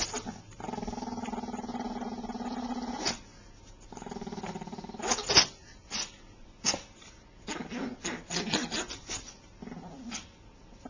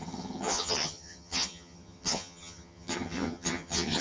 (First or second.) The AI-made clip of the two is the second